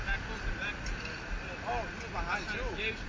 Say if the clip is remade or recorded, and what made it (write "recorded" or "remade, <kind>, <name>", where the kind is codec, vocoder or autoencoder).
recorded